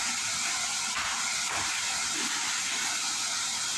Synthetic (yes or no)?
no